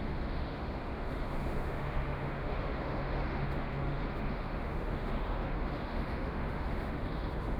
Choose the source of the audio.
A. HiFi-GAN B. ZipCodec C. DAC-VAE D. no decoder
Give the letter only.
C